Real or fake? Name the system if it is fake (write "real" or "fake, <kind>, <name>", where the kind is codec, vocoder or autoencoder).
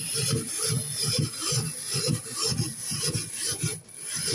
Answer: real